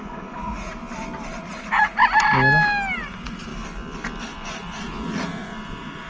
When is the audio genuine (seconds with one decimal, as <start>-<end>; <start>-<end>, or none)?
0.8-1.4; 2.0-3.1; 3.5-4.2